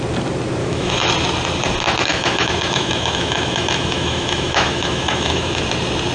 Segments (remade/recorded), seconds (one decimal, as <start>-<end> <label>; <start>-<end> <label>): 0.0-0.6 recorded; 0.6-1.1 remade; 1.1-2.0 recorded; 2.0-5.6 remade; 5.6-6.1 recorded